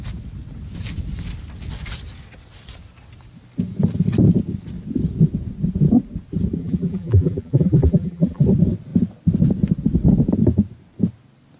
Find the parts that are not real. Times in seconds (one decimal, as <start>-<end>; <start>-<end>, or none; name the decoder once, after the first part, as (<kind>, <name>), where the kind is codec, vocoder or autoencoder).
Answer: 6.6-8.4 (vocoder, BigVGAN v2)